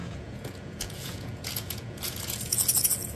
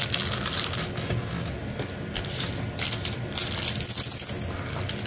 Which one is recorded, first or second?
second